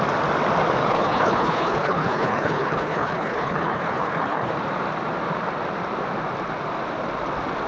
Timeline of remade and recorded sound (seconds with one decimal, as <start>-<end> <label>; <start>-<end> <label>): 0.0-0.8 recorded; 0.8-4.5 remade; 4.5-7.7 recorded